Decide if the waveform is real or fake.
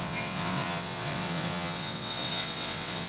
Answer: fake